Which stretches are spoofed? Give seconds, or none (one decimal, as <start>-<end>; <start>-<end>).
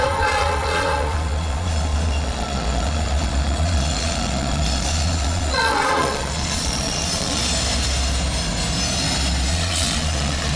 0.0-7.4; 9.5-10.6